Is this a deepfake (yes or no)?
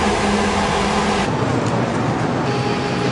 no